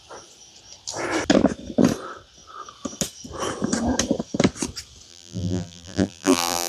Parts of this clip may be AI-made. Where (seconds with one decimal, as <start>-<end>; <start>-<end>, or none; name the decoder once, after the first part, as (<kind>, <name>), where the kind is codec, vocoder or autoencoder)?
5.1-6.7 (vocoder, BigVGAN v2)